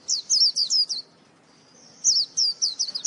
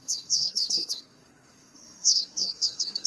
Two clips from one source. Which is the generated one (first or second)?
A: second